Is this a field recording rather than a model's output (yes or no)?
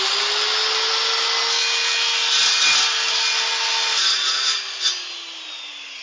yes